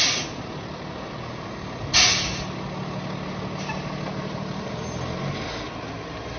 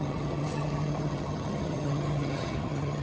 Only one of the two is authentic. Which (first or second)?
first